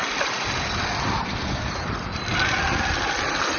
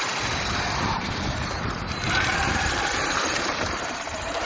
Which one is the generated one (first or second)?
second